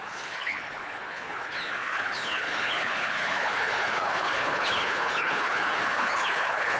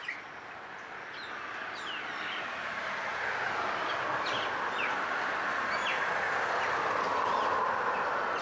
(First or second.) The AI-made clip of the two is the first